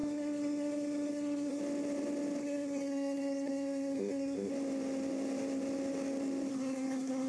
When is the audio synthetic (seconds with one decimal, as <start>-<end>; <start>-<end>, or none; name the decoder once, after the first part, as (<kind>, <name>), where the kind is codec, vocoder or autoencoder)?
0.0-1.6 (codec, SNAC); 2.4-4.5; 6.5-7.3